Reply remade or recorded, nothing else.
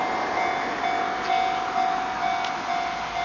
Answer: recorded